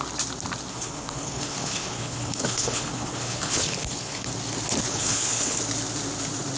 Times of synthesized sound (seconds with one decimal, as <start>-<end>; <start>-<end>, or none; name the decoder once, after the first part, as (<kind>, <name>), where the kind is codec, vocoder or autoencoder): 0.7-4.3 (codec, HILCodec); 4.9-5.6